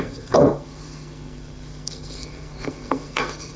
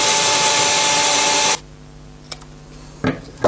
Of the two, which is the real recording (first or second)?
second